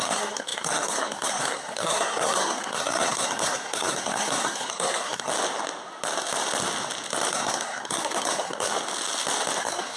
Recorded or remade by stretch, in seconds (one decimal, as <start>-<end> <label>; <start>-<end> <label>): 0.0-5.3 remade; 5.3-7.3 recorded; 7.3-8.7 remade; 8.7-9.6 recorded; 9.6-10.0 remade